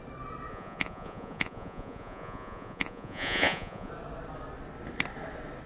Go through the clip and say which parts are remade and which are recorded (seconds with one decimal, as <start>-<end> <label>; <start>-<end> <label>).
0.0-0.5 recorded; 0.5-3.9 remade; 3.9-5.7 recorded